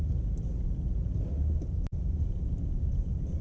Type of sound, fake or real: real